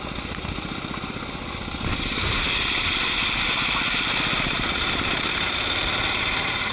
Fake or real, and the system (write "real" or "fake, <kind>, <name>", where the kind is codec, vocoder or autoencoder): real